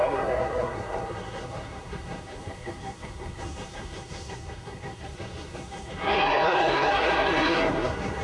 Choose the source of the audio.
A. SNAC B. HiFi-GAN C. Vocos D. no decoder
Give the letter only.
A